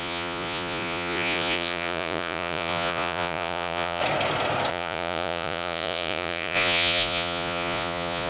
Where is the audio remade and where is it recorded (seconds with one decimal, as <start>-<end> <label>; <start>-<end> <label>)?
0.0-4.0 remade; 4.0-4.7 recorded; 4.7-8.3 remade